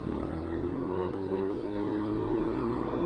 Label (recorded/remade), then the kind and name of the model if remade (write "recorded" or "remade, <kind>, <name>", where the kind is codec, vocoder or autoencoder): remade, codec, SNAC